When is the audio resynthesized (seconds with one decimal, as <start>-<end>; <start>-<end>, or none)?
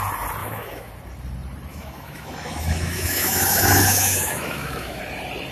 0.4-0.9; 1.7-5.0